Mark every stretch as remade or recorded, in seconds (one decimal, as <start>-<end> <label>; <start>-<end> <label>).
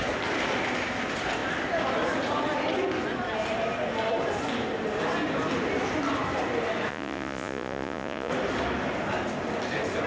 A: 0.0-6.9 recorded; 6.9-8.3 remade; 8.3-10.1 recorded